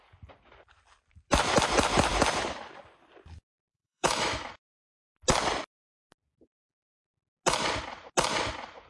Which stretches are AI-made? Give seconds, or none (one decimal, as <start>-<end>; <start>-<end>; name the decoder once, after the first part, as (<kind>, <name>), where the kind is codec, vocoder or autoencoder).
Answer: 3.7-4.5 (autoencoder, DAC-VAE)